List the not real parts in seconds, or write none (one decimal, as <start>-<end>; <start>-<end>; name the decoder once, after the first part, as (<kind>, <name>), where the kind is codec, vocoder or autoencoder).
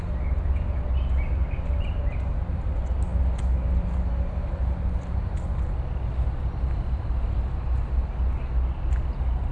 none